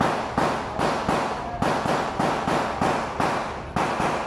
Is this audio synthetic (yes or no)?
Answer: no